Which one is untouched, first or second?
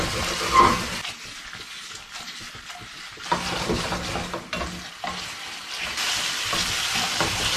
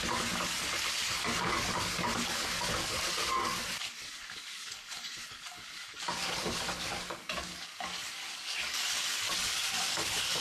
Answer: first